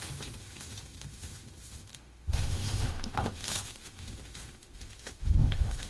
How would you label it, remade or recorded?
remade